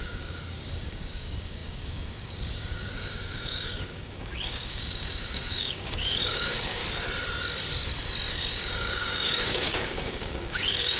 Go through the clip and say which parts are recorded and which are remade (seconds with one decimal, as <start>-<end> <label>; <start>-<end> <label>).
0.0-6.8 remade; 6.8-8.3 recorded; 8.3-11.0 remade